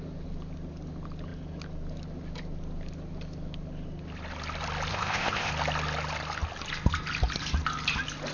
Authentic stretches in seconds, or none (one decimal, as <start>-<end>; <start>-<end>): 0.0-4.9; 5.5-8.3